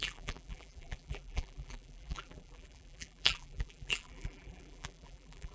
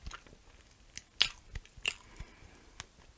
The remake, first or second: first